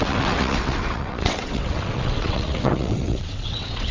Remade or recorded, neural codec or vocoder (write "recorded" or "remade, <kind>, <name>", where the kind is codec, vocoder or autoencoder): remade, vocoder, WaveNeXt